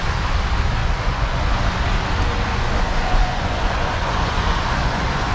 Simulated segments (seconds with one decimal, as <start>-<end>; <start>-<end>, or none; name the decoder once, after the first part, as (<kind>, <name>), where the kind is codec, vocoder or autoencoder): 0.8-1.5 (vocoder, Vocos); 2.5-5.3